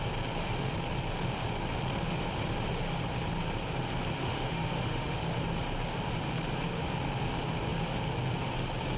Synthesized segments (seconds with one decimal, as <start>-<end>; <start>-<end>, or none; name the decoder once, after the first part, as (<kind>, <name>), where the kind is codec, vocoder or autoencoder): 4.2-5.2 (autoencoder, DAC-VAE)